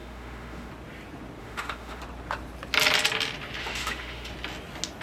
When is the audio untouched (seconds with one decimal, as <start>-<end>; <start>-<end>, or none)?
0.7-1.4; 2.0-3.6; 4.3-5.0